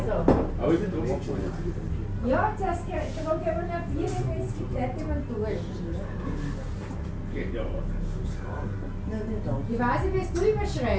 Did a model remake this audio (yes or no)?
no